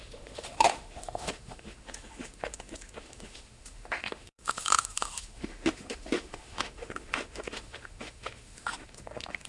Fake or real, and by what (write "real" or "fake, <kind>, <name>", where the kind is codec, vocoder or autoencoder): fake, autoencoder, DAC-VAE